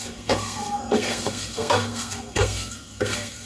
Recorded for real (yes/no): no